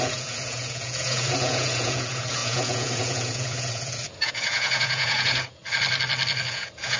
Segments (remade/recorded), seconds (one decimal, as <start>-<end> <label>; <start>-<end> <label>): 0.0-5.6 remade; 5.6-6.5 recorded; 6.5-7.0 remade